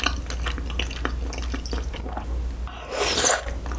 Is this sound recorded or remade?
recorded